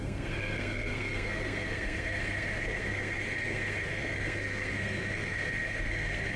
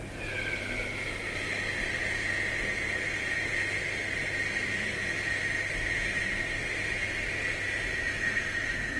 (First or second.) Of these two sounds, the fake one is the first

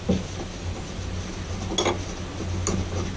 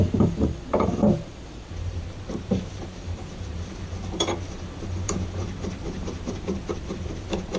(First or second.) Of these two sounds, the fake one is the second